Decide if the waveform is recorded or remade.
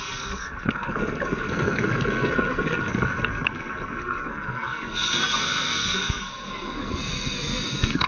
remade